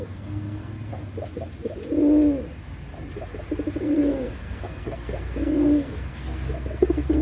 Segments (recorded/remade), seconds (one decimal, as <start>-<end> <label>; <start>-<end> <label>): 0.0-0.9 remade; 0.9-3.8 recorded; 3.8-7.2 remade